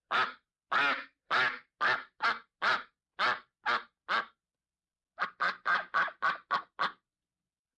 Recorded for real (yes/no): yes